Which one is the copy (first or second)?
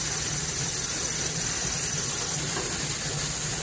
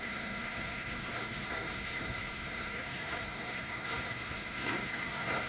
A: second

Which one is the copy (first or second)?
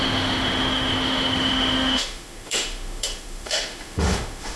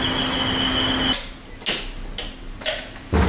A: first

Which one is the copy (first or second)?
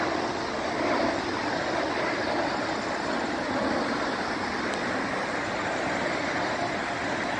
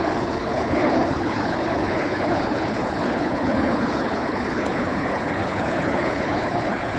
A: second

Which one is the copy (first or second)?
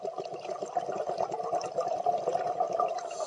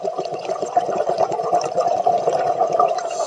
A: second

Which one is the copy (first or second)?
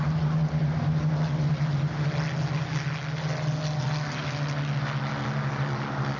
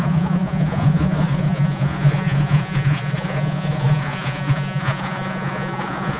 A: second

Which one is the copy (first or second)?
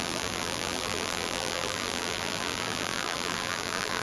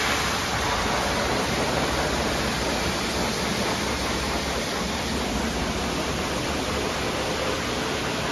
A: first